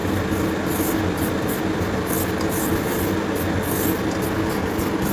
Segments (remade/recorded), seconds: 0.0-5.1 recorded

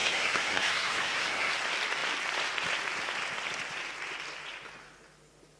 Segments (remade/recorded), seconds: 0.0-1.6 remade; 1.6-5.6 recorded

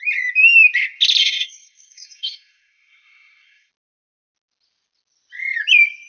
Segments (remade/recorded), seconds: 0.0-1.2 recorded; 1.2-3.7 remade; 3.7-6.1 recorded

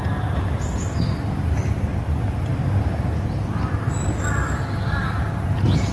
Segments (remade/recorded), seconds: 0.0-5.9 recorded